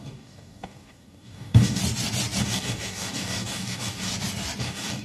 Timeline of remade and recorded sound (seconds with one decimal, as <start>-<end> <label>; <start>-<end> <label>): 0.0-1.8 remade; 1.8-2.4 recorded; 2.4-4.1 remade; 4.1-4.6 recorded; 4.6-5.0 remade